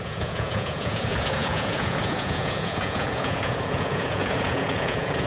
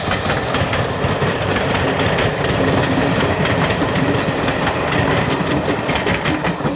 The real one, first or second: second